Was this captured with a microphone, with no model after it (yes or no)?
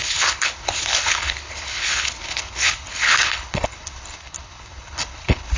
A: no